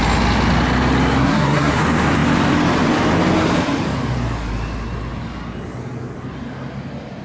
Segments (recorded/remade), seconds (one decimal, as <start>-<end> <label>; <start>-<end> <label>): 0.0-1.2 recorded; 1.2-1.8 remade; 1.8-7.2 recorded